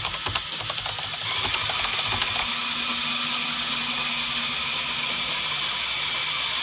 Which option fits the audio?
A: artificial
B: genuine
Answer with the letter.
B